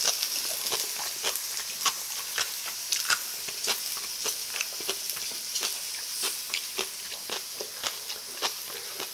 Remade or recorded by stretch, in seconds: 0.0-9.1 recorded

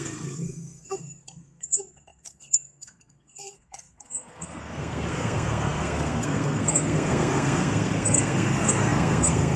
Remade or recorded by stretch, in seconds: 0.0-9.6 remade

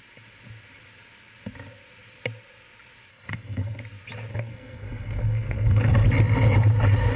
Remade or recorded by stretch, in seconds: 0.0-3.1 recorded; 3.1-3.8 remade; 3.8-4.3 recorded; 4.3-5.9 remade; 5.9-7.2 recorded

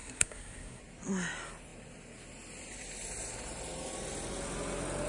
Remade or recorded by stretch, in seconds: 0.0-0.8 remade; 0.8-5.1 recorded

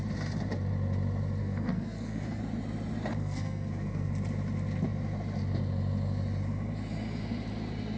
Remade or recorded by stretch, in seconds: 0.0-1.4 recorded; 1.4-2.4 remade; 2.4-3.2 recorded; 3.2-4.1 remade; 4.1-8.0 recorded

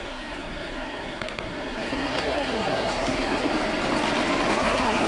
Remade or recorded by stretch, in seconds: 0.0-3.5 remade; 3.5-4.5 recorded; 4.5-5.1 remade